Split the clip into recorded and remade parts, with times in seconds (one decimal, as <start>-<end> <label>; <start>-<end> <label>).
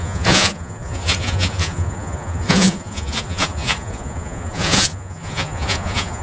0.0-6.2 remade